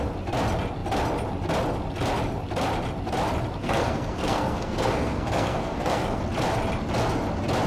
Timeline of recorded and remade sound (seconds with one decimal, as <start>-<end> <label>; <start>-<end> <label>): 0.0-3.6 recorded; 3.6-6.2 remade; 6.2-7.7 recorded